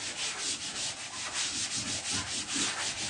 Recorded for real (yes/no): yes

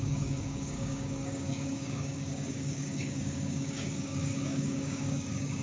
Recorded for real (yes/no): no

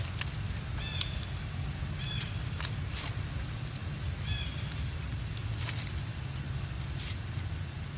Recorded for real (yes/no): yes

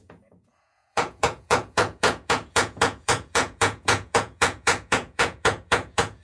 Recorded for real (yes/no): no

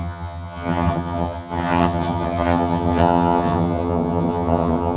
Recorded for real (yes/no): no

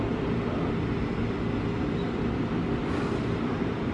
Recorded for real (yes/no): yes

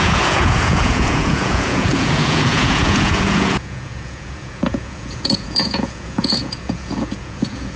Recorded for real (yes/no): no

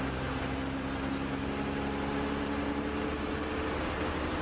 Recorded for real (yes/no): yes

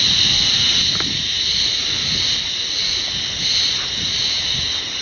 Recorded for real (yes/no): yes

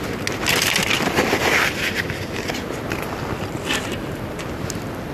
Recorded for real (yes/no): yes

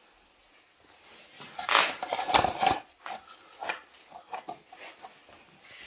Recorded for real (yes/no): yes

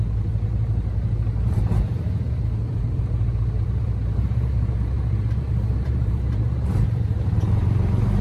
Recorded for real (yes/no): no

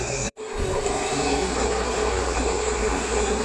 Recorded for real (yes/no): no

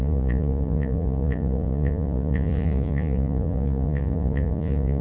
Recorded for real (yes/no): no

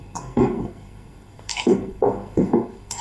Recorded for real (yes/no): no